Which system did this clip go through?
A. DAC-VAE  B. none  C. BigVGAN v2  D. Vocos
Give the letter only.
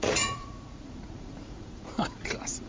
D